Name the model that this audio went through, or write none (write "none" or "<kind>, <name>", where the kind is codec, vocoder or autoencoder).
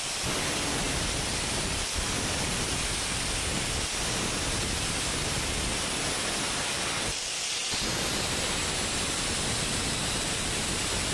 none